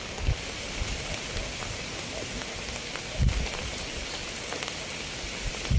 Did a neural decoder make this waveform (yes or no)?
no